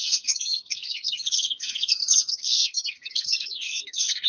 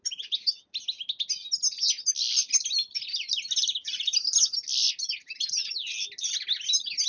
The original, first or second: second